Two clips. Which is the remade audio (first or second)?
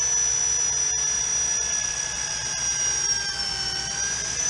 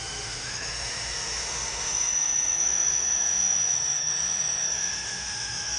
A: second